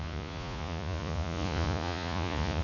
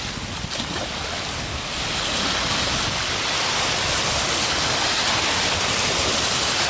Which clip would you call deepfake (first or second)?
first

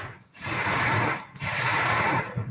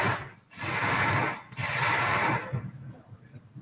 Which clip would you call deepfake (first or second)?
first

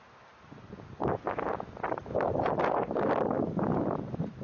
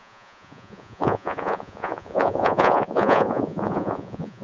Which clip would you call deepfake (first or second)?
second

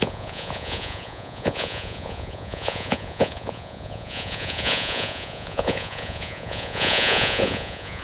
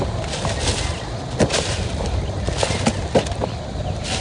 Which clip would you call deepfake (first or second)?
first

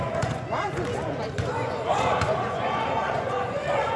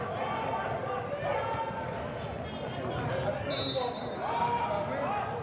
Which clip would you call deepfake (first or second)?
first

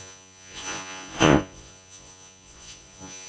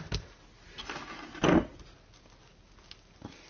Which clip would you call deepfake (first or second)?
first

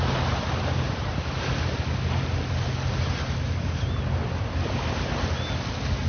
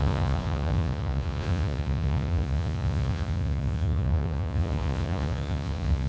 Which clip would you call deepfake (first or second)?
second